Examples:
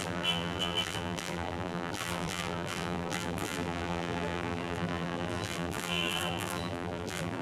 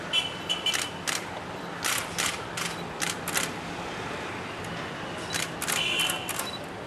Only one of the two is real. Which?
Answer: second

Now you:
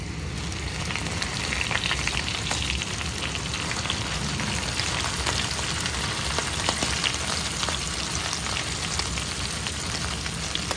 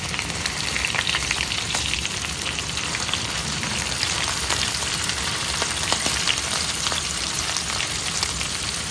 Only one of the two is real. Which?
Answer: first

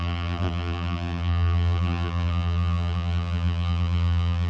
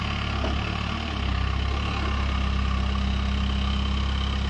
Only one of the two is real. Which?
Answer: second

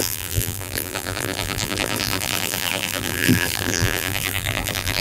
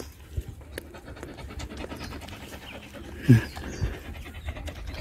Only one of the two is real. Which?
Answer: second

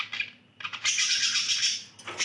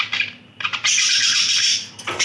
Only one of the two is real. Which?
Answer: first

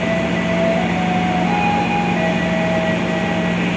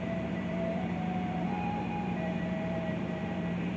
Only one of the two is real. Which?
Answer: first